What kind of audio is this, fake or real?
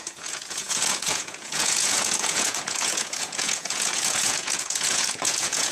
fake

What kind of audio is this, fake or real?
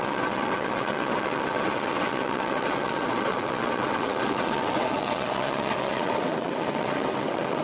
fake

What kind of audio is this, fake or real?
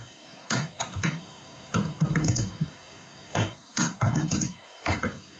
fake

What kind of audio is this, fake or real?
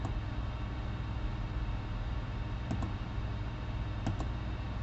real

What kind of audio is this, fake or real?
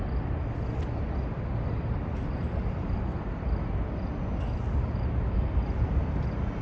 real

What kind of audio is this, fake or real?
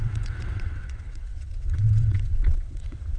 fake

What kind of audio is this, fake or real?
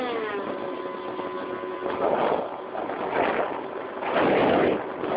real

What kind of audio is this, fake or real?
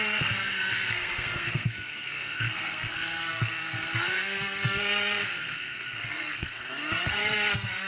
fake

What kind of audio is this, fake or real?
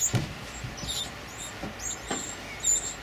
real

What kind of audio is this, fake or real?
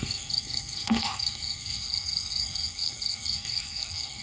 fake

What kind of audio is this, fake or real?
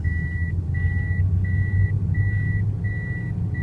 real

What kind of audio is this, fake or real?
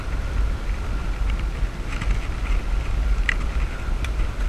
real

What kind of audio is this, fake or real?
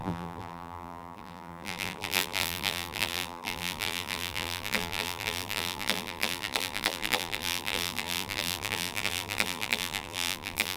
fake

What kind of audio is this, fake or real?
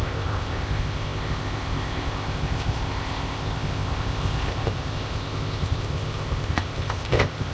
fake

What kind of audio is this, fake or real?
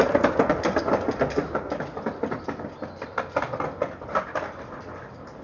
real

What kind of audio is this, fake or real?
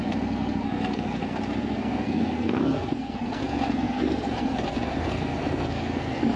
fake